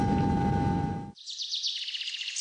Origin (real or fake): real